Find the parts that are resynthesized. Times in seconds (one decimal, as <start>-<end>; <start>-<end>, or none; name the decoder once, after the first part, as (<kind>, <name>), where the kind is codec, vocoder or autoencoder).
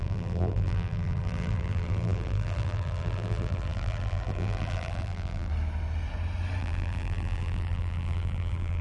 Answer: 0.0-5.5 (vocoder, BigVGAN v2); 6.6-8.8